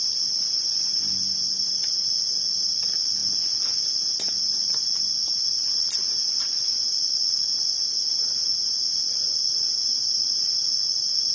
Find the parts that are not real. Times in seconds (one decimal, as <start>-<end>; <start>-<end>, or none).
none